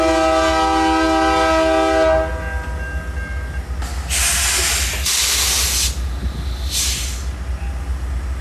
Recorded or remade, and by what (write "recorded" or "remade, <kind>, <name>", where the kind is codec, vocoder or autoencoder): recorded